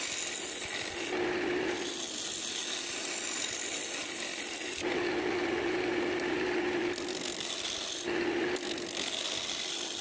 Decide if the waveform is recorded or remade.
recorded